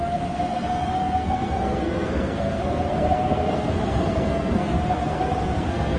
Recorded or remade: remade